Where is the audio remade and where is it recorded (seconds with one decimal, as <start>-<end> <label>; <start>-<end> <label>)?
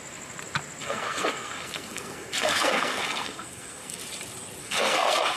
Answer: 0.0-0.8 recorded; 0.8-4.0 remade; 4.0-4.6 recorded; 4.6-5.4 remade